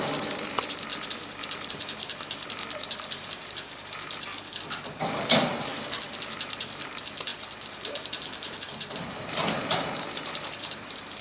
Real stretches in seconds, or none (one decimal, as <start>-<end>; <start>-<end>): 4.3-4.9; 7.3-8.0